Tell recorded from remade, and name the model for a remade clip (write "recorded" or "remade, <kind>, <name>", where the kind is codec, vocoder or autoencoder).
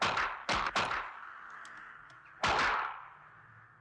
recorded